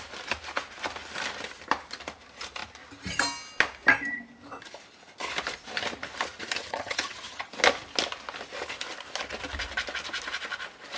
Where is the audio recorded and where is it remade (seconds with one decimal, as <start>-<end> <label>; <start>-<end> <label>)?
0.0-6.6 recorded; 6.6-7.5 remade; 7.5-11.0 recorded